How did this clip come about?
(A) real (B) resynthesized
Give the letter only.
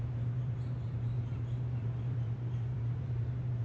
B